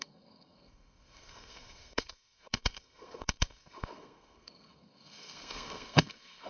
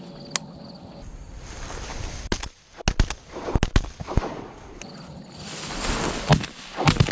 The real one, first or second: second